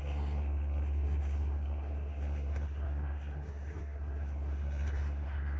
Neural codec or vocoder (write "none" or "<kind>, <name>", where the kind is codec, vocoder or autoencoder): codec, SNAC